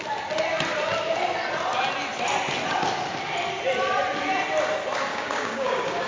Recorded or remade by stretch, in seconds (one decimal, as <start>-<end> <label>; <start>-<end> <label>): 0.0-5.1 recorded; 5.1-6.1 remade